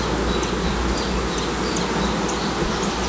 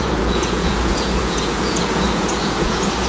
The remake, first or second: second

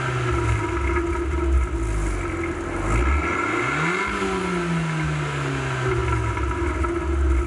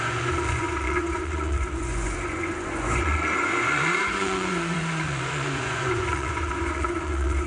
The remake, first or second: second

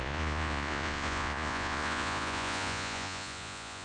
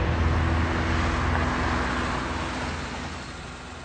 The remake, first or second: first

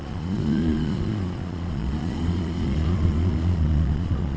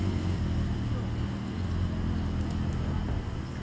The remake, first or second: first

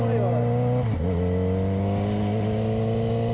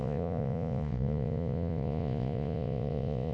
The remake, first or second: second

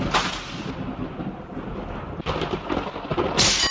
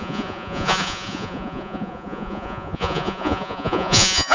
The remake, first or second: second